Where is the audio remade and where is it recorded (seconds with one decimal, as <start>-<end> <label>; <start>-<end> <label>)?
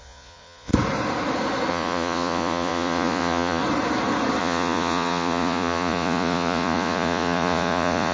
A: 0.0-0.7 remade; 0.7-1.7 recorded; 1.7-3.6 remade; 3.6-4.4 recorded; 4.4-8.1 remade